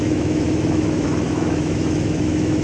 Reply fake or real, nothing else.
fake